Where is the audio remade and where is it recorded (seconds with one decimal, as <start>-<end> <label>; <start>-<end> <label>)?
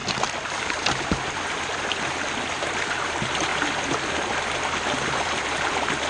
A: 0.0-1.8 remade; 1.8-3.5 recorded; 3.5-6.1 remade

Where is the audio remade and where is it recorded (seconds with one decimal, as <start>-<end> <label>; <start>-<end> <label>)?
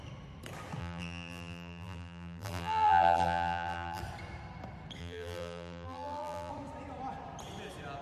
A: 0.0-0.8 recorded; 0.8-4.0 remade; 4.0-5.0 recorded; 5.0-6.5 remade; 6.5-8.0 recorded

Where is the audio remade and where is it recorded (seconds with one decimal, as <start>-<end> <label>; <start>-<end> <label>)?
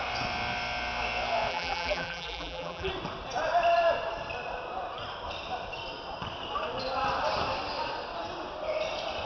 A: 0.0-1.5 recorded; 1.5-2.9 remade; 2.9-9.3 recorded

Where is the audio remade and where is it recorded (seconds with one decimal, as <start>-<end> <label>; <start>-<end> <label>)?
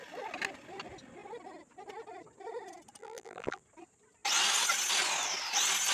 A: 0.0-3.0 recorded; 3.0-3.6 remade; 3.6-5.9 recorded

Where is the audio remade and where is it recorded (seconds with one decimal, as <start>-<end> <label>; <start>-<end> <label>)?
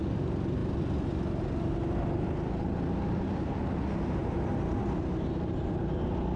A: 0.0-6.4 recorded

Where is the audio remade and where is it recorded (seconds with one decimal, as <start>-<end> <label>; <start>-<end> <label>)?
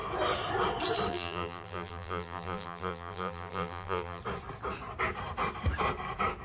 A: 0.0-1.1 recorded; 1.1-4.2 remade; 4.2-6.4 recorded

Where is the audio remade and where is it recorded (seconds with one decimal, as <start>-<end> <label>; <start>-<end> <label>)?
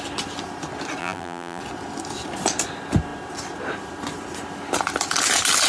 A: 0.0-1.0 recorded; 1.0-1.6 remade; 1.6-5.7 recorded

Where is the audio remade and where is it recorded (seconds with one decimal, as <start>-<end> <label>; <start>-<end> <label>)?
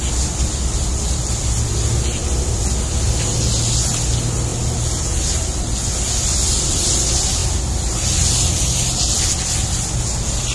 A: 0.0-10.5 recorded